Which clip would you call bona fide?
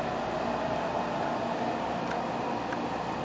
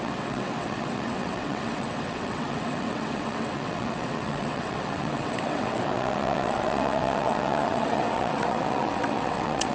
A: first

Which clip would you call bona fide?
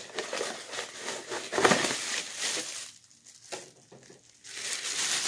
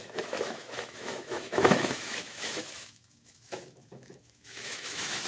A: first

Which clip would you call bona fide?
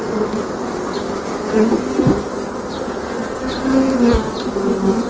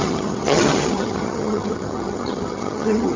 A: first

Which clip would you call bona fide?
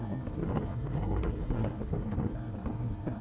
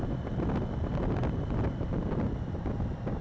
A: second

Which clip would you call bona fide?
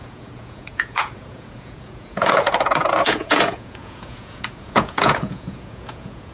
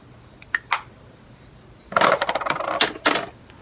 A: second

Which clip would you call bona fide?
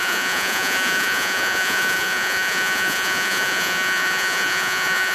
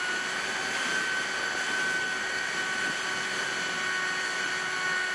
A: second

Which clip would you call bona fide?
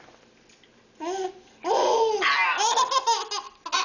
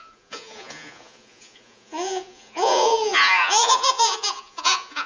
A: first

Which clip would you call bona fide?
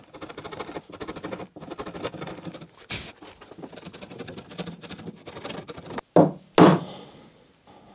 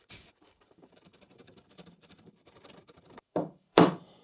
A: first